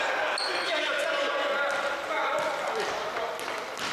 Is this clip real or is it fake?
real